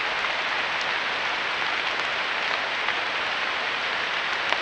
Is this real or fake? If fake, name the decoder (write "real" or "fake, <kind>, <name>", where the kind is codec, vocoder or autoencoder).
real